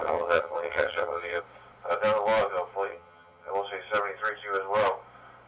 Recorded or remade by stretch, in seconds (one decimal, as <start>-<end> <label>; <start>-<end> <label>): 0.0-1.4 remade; 1.4-2.9 recorded; 2.9-3.5 remade; 3.5-5.5 recorded